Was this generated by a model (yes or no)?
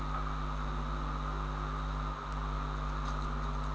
no